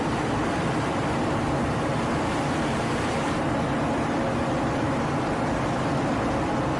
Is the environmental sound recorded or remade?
remade